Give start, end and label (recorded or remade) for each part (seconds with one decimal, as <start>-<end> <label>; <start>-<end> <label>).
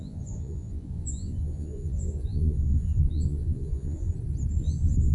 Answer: 0.0-4.1 remade; 4.1-4.6 recorded; 4.6-5.1 remade